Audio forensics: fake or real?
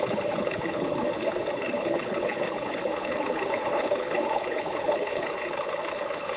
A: fake